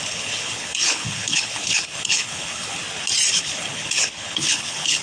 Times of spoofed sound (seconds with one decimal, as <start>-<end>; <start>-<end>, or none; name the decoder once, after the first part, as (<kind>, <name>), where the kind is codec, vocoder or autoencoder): 0.0-2.8 (codec, HILCodec); 3.3-5.0